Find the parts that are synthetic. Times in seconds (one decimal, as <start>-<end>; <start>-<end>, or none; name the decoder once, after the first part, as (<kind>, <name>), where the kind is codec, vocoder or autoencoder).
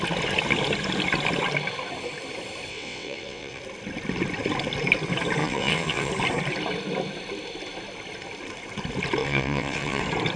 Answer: 2.7-3.6 (vocoder, WaveNeXt); 5.4-6.1; 9.2-10.0